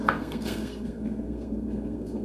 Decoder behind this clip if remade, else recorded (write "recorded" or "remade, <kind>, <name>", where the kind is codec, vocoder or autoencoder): remade, codec, SNAC